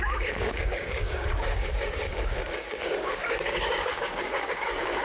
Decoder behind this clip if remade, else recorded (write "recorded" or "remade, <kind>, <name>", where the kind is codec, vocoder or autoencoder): remade, codec, DAC